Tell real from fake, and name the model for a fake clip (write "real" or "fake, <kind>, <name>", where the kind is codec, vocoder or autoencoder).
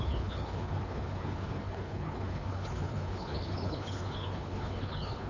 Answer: fake, codec, HILCodec